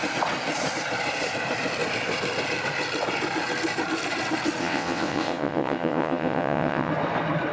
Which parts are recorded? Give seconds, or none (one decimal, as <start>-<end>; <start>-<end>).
0.0-4.6; 6.9-7.5